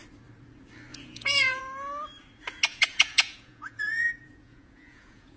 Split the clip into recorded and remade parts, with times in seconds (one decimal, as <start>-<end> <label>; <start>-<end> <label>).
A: 0.0-0.9 recorded; 0.9-1.6 remade; 1.6-2.7 recorded; 2.7-5.4 remade